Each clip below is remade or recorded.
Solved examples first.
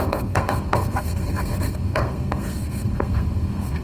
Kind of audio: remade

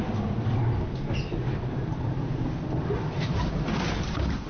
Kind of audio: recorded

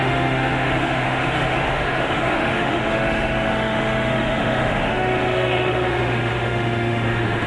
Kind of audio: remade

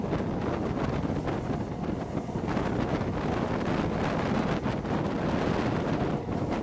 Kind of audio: recorded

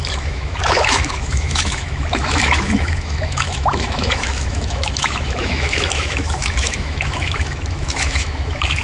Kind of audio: remade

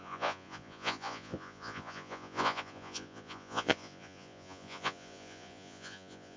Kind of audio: remade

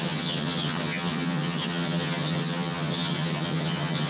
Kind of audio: remade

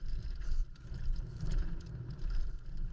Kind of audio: remade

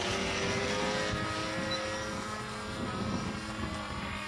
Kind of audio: recorded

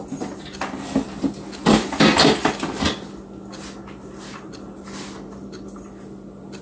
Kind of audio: recorded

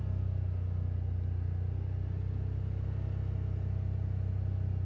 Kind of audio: recorded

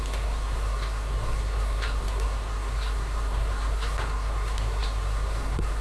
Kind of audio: remade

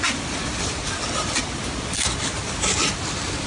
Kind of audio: remade